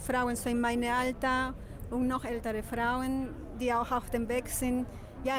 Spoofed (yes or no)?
no